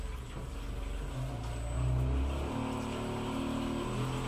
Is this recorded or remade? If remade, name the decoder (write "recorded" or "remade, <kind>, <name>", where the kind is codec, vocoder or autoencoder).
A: recorded